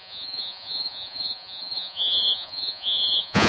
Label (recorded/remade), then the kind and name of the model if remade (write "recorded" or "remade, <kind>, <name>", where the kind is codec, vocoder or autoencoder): remade, vocoder, Vocos